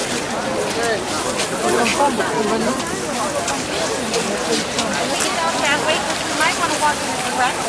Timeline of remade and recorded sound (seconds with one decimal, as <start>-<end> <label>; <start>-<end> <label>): 0.0-7.7 recorded